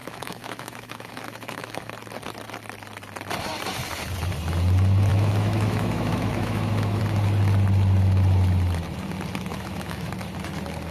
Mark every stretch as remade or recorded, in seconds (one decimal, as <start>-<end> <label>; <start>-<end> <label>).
0.0-1.9 remade; 1.9-5.1 recorded; 5.1-7.0 remade; 7.0-9.5 recorded; 9.5-10.1 remade; 10.1-10.9 recorded